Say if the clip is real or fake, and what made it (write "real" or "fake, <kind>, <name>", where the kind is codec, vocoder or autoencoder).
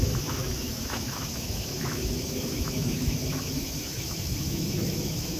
fake, autoencoder, DAC-VAE